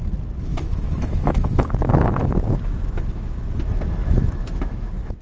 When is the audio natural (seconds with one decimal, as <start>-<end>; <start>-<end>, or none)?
0.0-0.5; 3.6-4.0